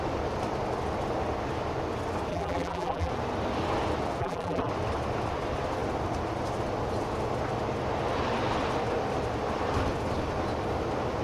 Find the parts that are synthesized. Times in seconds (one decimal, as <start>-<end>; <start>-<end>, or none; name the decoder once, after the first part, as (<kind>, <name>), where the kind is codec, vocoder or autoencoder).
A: 2.3-3.1 (vocoder, BigVGAN v2); 4.2-4.7